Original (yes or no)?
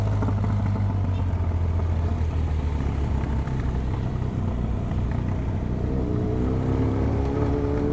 yes